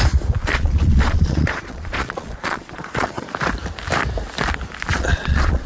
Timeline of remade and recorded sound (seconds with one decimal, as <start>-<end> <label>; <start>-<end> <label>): 0.0-0.4 recorded; 0.4-3.3 remade; 3.3-4.9 recorded; 4.9-5.7 remade